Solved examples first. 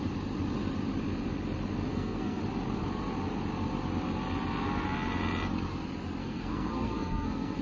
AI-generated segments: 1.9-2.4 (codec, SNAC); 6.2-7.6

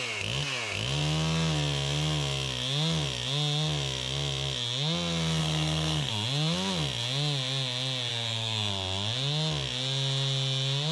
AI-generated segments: 5.4-6.1 (codec, SNAC); 8.1-8.7

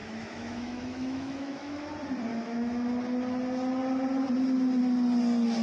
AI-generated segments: 0.0-1.9 (autoencoder, DAC-VAE); 2.3-2.9

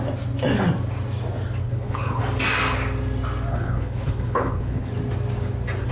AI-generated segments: 1.6-2.2 (codec, HILCodec); 3.5-4.9